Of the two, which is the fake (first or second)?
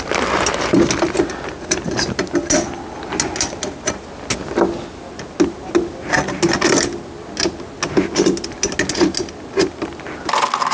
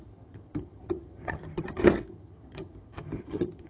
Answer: second